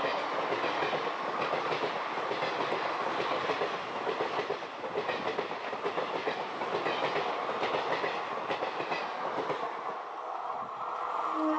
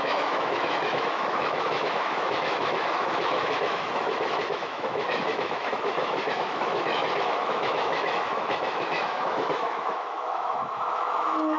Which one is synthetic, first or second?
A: second